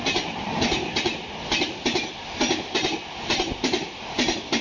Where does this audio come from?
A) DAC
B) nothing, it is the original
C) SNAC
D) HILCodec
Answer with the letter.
B